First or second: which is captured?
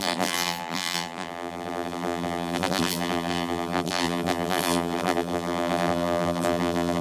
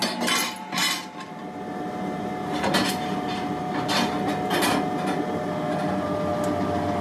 second